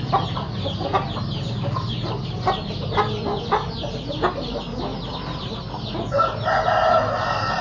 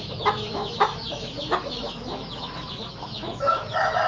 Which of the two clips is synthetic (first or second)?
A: second